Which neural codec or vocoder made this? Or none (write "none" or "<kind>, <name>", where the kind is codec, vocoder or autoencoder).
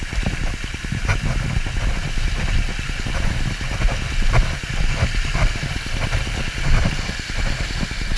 none